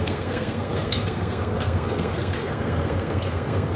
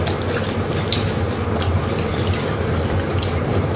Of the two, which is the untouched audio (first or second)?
second